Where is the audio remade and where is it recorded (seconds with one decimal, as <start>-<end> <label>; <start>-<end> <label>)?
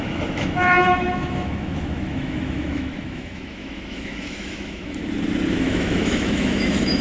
0.0-5.0 remade; 5.0-5.6 recorded; 5.6-7.0 remade